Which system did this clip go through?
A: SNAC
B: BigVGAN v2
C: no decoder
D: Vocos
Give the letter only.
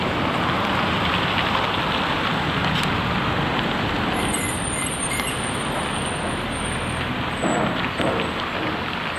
C